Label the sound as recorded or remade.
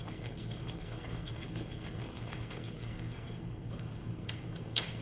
remade